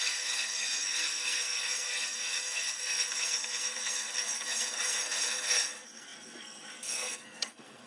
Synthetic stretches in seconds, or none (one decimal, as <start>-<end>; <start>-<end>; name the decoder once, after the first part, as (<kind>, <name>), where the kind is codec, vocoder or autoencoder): 0.0-7.9 (codec, SNAC)